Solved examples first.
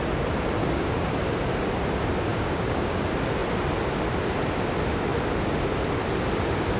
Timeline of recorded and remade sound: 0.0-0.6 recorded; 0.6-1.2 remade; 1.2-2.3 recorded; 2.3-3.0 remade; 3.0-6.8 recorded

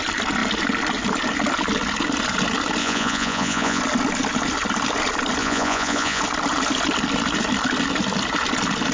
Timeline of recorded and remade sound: 0.0-2.8 recorded; 2.8-3.8 remade; 3.8-5.4 recorded; 5.4-6.2 remade; 6.2-8.9 recorded

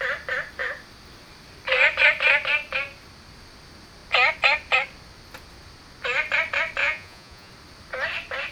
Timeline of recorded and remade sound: 0.0-6.8 recorded; 6.8-7.5 remade; 7.5-8.5 recorded

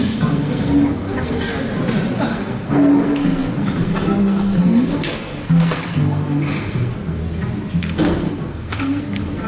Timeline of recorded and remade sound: 0.0-1.5 remade; 1.5-2.3 recorded; 2.3-7.2 remade; 7.2-7.8 recorded; 7.8-9.5 remade

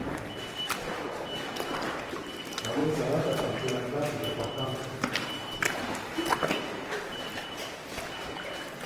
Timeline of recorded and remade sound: 0.0-8.9 recorded

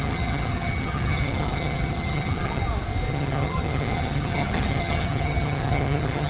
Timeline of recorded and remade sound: 0.0-2.6 remade; 2.6-3.1 recorded; 3.1-6.3 remade

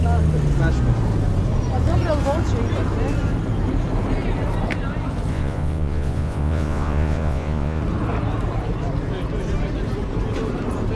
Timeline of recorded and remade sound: 0.0-5.3 recorded; 5.3-7.8 remade; 7.8-11.0 recorded